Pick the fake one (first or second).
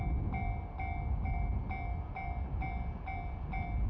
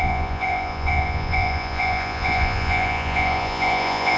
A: second